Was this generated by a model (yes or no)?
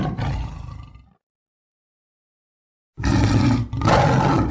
no